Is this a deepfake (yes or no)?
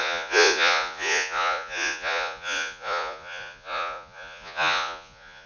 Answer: yes